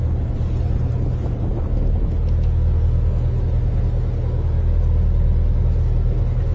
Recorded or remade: recorded